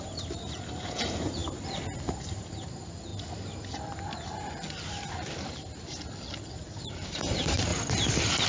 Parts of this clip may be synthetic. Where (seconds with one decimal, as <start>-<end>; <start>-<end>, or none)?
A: 0.0-3.1; 6.5-7.7